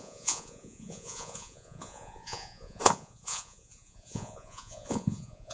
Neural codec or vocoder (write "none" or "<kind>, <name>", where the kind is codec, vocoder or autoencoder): vocoder, Vocos